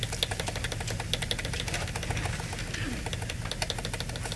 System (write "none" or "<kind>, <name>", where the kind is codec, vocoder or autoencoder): none